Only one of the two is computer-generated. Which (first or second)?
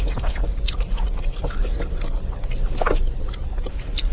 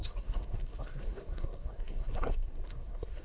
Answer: second